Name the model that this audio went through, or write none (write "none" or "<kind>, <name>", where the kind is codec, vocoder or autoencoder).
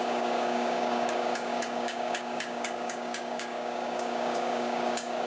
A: codec, DAC